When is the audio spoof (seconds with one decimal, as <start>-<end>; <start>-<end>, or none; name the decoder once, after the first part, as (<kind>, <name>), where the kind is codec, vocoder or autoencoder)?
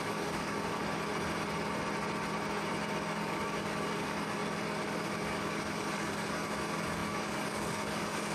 0.0-0.8 (codec, DAC); 2.9-8.3